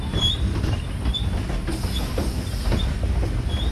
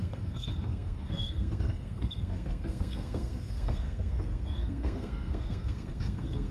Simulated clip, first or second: second